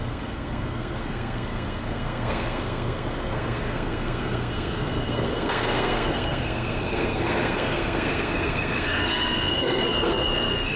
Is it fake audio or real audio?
fake